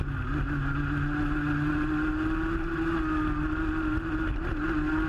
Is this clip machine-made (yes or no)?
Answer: no